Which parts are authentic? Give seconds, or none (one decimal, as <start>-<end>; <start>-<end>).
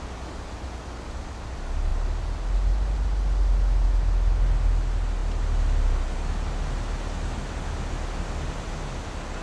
0.0-9.4